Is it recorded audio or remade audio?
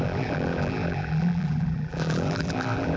remade